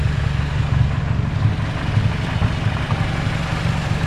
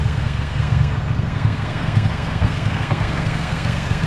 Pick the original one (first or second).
first